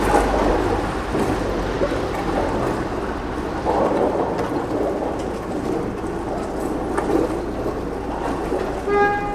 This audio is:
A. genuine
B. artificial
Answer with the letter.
A